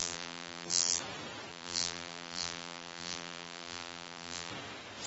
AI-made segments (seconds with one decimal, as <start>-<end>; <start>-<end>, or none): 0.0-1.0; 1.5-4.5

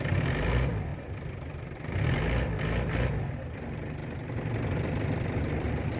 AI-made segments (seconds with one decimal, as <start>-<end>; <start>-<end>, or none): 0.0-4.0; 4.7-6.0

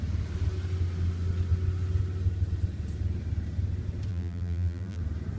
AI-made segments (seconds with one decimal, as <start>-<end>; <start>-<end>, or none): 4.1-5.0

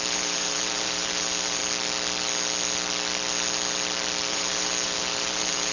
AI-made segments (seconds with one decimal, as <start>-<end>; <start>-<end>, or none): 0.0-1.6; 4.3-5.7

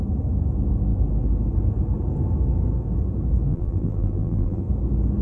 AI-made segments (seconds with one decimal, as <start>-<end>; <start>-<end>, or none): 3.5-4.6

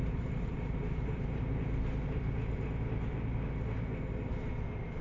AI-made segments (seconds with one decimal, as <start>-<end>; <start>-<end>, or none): 0.0-1.5

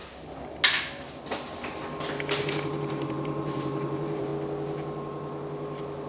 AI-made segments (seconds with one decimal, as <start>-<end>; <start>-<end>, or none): 2.4-4.3

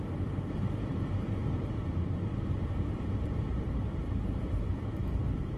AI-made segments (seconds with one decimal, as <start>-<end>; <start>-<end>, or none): 0.0-5.6